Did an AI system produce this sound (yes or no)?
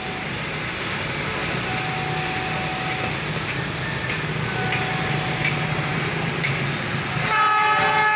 no